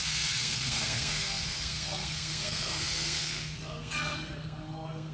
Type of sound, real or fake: fake